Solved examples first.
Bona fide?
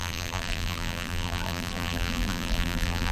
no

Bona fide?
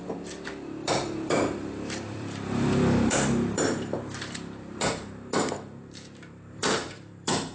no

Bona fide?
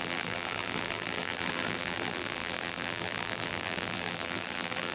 no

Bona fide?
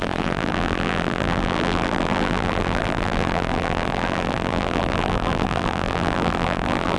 no